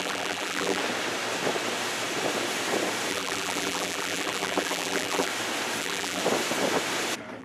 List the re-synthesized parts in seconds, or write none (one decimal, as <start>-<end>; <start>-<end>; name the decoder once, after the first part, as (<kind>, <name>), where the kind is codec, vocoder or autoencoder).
0.0-0.8 (vocoder, BigVGAN v2); 3.1-5.3; 5.8-6.2